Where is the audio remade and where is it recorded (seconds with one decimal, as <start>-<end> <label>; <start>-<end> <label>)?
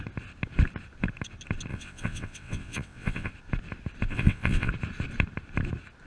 0.0-1.7 recorded; 1.7-3.3 remade; 3.3-4.1 recorded; 4.1-4.7 remade; 4.7-6.1 recorded